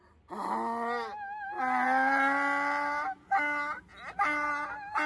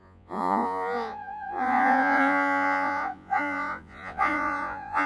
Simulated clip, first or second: second